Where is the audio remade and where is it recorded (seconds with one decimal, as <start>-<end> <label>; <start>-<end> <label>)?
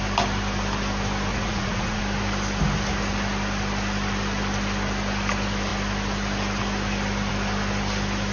0.0-1.3 recorded; 1.3-2.0 remade; 2.0-8.3 recorded